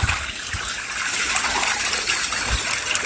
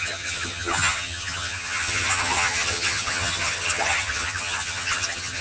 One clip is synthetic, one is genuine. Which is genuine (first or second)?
first